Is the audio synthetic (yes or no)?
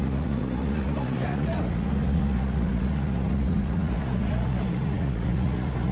yes